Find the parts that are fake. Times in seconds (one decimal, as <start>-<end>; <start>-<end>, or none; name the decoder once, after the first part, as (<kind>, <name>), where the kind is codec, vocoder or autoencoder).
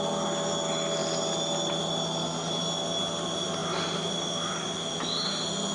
none